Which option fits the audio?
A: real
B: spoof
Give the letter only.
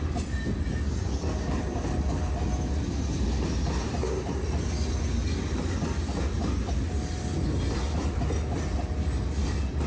A